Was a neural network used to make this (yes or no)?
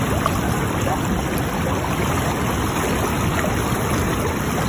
no